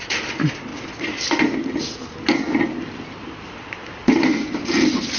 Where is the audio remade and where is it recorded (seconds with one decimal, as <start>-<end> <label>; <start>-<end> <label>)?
0.0-5.2 recorded